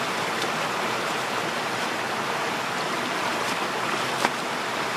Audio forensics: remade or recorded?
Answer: remade